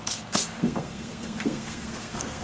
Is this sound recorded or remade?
remade